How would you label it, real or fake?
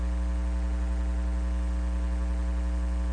real